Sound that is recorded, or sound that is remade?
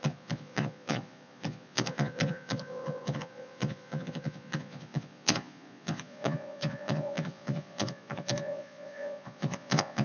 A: remade